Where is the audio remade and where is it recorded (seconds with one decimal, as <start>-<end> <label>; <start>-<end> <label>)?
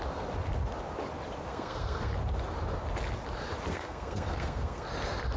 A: 0.0-1.5 recorded; 1.5-2.1 remade; 2.1-3.7 recorded; 3.7-4.9 remade; 4.9-5.4 recorded